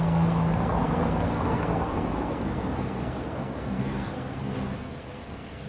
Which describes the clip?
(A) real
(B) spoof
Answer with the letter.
B